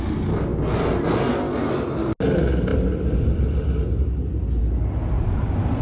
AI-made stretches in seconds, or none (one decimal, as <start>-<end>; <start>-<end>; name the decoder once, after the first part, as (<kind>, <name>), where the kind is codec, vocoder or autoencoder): none